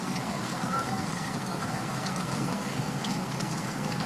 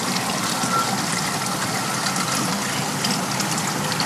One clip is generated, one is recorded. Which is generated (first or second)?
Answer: first